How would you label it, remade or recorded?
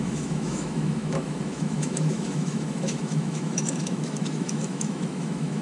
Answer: remade